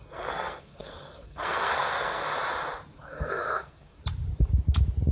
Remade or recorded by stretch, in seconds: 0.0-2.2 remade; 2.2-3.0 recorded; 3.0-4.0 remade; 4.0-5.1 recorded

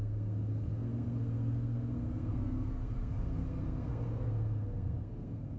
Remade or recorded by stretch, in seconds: 0.0-5.6 remade

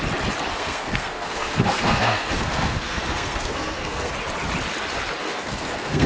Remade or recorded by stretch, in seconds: 0.0-0.5 recorded; 0.5-4.1 remade; 4.1-5.2 recorded; 5.2-6.1 remade

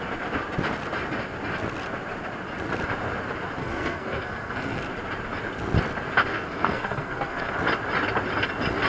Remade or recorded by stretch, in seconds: 0.0-3.6 recorded; 3.6-4.8 remade; 4.8-6.3 recorded; 6.3-7.5 remade; 7.5-8.9 recorded

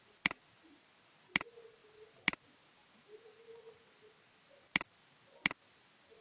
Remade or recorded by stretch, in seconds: 0.0-6.2 recorded

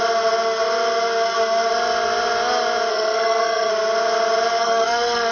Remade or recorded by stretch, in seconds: 0.0-2.9 recorded; 2.9-3.7 remade; 3.7-4.6 recorded; 4.6-5.3 remade